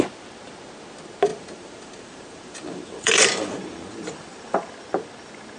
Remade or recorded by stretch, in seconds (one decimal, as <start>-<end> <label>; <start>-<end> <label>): 0.0-1.3 recorded; 1.3-4.7 remade; 4.7-5.6 recorded